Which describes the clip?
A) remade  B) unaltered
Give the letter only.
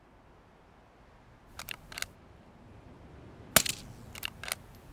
B